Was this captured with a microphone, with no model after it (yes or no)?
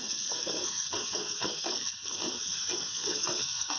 no